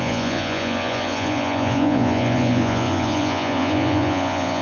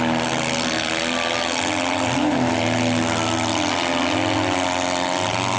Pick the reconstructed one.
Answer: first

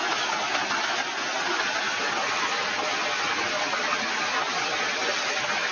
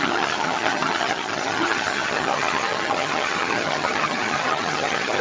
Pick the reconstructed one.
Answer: second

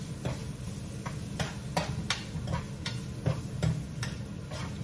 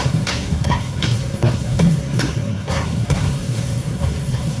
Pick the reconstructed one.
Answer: second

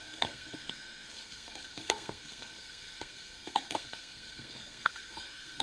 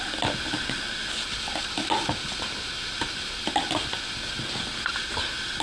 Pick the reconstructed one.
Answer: first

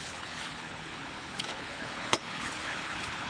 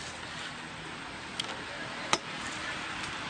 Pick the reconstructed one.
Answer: first